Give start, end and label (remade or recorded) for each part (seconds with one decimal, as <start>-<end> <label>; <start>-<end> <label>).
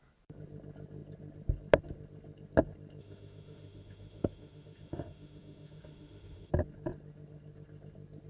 0.0-3.0 recorded; 3.0-6.5 remade; 6.5-8.3 recorded